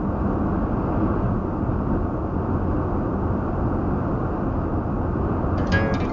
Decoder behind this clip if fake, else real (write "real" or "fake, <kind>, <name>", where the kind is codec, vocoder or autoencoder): real